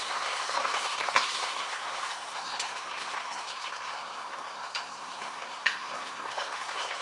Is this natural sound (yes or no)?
no